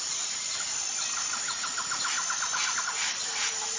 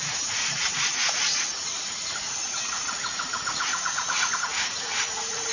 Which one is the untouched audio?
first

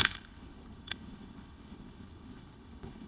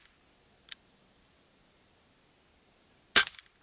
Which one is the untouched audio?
second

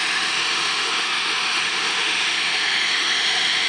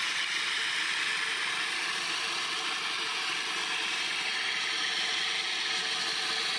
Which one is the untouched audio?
second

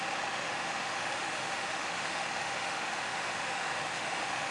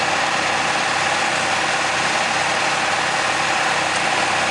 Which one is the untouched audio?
second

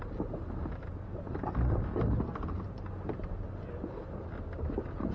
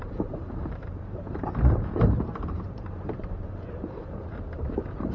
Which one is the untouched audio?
first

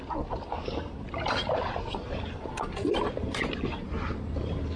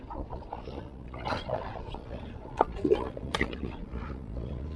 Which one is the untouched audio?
first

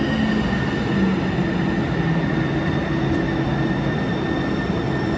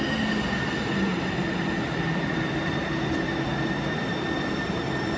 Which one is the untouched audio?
first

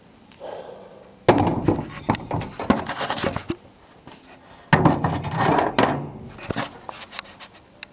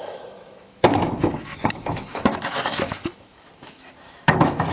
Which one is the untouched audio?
first